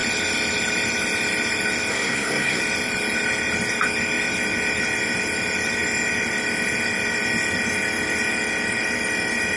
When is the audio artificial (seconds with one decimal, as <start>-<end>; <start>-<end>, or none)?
1.9-2.6